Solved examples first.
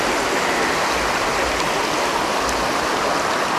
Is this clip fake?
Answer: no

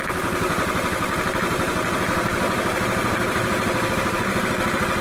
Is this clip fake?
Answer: no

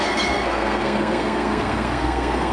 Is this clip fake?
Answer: yes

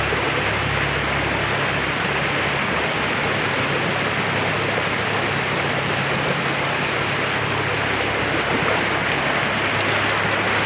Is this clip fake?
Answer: no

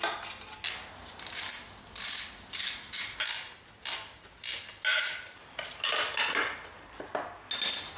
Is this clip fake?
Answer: no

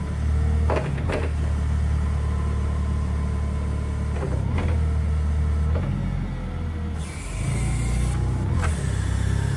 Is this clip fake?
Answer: no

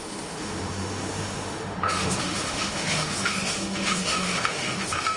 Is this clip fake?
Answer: yes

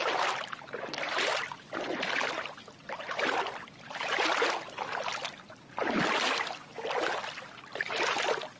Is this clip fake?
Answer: no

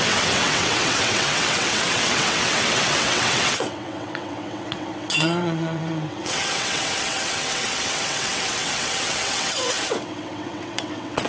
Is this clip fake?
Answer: yes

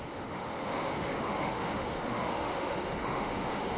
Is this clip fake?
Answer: yes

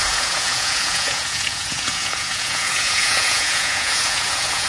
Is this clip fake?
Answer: yes